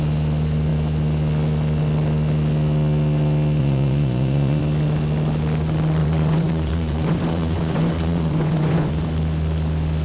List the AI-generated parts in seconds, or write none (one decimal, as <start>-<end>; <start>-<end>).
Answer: 3.6-4.6; 6.0-8.9